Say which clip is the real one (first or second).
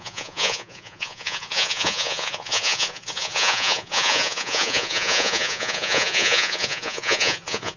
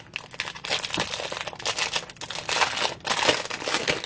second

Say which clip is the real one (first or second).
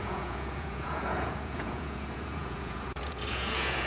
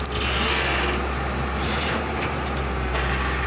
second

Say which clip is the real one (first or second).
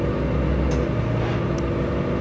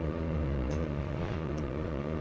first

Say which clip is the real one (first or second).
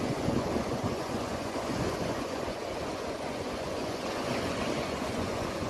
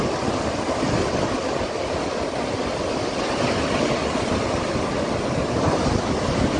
second